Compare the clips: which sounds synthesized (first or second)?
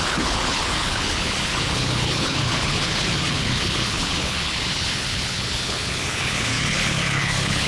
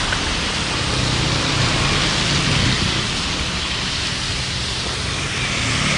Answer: first